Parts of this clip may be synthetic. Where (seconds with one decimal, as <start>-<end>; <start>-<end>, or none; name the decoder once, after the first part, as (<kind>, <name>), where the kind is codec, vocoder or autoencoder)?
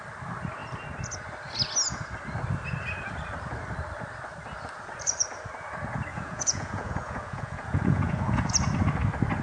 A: 6.1-8.5 (vocoder, Vocos)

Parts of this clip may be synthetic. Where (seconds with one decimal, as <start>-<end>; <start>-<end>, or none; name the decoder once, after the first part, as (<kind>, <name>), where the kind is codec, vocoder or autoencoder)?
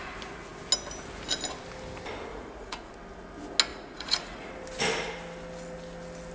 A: 2.3-2.9 (vocoder, Vocos); 3.7-4.5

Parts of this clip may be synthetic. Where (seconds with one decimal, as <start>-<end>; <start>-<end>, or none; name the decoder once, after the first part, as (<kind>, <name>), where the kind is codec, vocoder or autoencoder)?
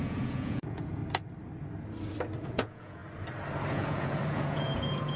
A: 0.0-1.0 (vocoder, Vocos); 2.4-3.0; 3.7-5.2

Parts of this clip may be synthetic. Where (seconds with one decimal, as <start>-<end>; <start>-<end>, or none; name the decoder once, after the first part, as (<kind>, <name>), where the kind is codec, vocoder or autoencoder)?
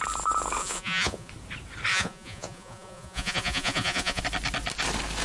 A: 0.6-1.3 (vocoder, Vocos); 1.9-4.2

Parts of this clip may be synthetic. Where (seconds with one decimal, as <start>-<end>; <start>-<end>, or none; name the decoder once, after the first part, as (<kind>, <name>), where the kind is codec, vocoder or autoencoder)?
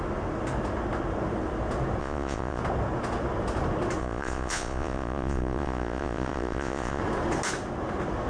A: 2.0-2.6 (vocoder, Vocos); 4.0-7.0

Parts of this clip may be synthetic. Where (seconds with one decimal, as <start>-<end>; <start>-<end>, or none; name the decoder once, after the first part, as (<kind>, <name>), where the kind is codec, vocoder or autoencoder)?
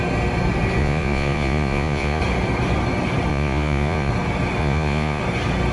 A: 0.8-2.2 (vocoder, Vocos); 3.3-4.1; 4.6-5.2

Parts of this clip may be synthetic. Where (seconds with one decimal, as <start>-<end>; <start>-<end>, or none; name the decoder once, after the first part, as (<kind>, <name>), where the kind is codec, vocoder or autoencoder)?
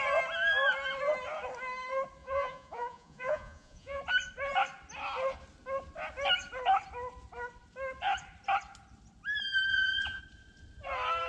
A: 2.2-4.0 (vocoder, Vocos); 9.7-10.2